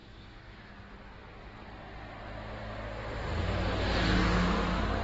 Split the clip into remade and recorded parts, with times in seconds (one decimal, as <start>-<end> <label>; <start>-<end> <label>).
0.0-0.7 remade; 0.7-5.0 recorded